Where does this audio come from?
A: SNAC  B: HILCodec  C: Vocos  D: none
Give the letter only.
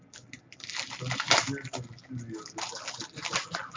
D